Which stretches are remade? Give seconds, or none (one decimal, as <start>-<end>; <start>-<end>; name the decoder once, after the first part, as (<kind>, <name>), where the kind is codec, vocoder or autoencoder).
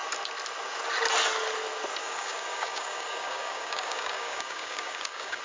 2.0-5.4 (codec, DAC)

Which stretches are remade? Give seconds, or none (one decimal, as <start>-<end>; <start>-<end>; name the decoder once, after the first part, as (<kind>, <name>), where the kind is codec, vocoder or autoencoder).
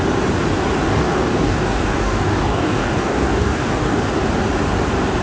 0.9-4.0 (codec, DAC)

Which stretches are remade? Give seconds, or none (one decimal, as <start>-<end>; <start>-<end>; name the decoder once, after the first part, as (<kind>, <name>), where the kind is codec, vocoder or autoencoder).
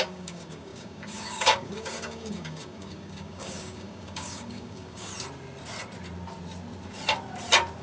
0.0-5.1 (codec, DAC)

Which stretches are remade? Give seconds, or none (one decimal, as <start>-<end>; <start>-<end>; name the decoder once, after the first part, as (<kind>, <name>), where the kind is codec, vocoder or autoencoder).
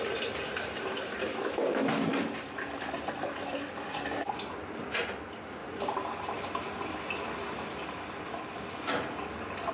1.2-2.1 (codec, DAC)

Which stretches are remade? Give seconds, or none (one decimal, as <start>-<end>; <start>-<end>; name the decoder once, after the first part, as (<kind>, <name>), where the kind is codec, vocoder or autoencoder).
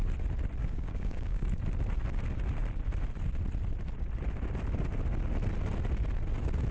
0.6-1.6 (codec, DAC)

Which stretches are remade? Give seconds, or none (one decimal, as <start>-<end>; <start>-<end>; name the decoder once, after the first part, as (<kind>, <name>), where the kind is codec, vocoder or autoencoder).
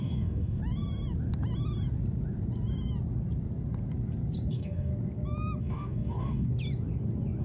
0.0-0.6 (codec, DAC); 4.5-4.9; 5.6-6.5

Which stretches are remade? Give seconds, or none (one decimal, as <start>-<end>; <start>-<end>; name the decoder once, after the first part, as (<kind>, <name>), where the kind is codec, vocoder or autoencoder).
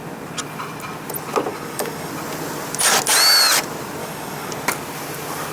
1.5-2.1 (codec, DAC); 4.0-4.5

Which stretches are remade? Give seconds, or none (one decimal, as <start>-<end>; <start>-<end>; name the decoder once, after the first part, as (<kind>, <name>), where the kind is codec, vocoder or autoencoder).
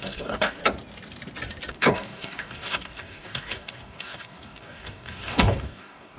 0.0-0.6 (codec, DAC); 1.7-6.2